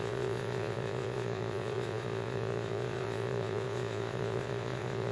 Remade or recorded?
remade